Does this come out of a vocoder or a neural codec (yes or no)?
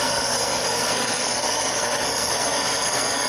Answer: yes